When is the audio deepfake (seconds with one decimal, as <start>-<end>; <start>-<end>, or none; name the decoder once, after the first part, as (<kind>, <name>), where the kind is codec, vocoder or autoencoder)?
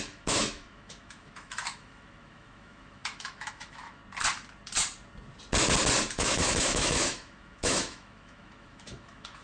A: 0.0-4.0 (autoencoder, DAC-VAE); 6.1-9.4